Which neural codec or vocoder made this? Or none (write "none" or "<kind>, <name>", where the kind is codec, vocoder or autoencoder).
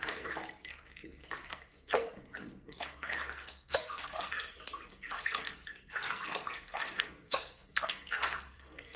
codec, SNAC